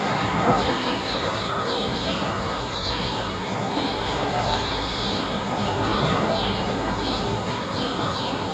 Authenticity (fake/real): fake